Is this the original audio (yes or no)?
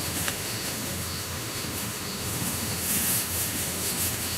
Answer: no